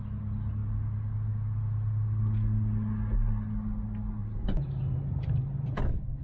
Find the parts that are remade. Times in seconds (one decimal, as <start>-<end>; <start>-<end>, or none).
4.2-6.2